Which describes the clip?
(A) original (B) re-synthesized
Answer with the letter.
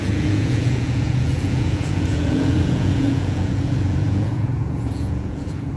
B